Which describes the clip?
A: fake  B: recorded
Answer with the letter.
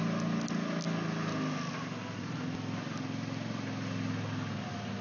B